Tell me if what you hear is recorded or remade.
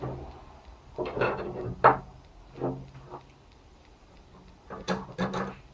recorded